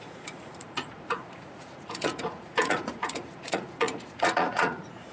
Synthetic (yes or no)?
yes